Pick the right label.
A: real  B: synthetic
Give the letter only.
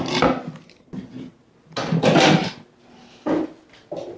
A